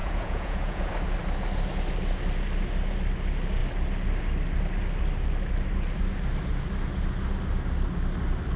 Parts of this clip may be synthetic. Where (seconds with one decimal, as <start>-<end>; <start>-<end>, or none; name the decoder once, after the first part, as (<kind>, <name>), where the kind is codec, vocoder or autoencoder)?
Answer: 0.0-0.9 (vocoder, Vocos)